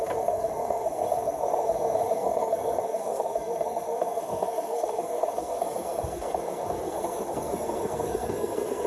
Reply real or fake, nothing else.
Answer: fake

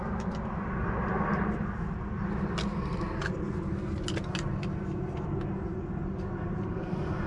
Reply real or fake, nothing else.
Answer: real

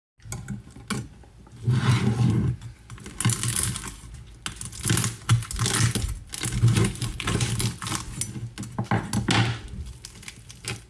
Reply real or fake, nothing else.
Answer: real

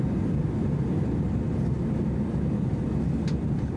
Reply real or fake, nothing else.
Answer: real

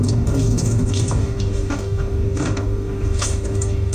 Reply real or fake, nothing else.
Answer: fake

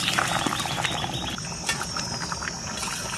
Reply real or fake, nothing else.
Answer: real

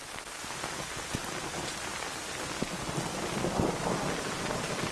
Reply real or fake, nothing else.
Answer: real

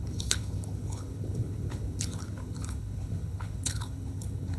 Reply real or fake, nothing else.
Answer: fake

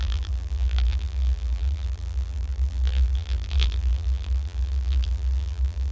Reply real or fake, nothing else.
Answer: fake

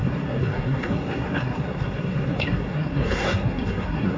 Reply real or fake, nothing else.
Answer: fake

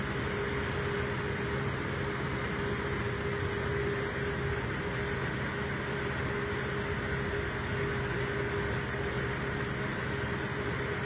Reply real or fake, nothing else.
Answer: real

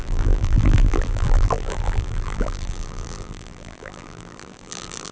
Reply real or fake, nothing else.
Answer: fake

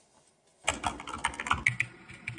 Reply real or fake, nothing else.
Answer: real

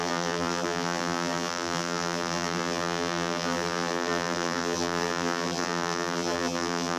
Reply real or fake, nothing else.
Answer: fake